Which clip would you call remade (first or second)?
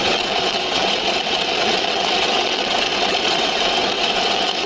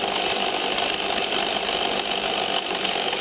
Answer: first